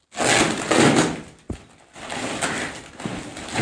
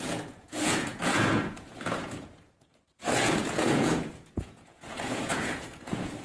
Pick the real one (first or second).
first